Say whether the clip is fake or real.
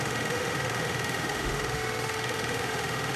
fake